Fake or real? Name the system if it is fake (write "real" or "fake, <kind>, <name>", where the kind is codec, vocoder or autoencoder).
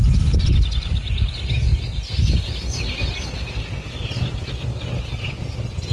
real